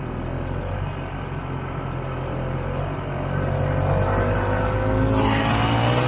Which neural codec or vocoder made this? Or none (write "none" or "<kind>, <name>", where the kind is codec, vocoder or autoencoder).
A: none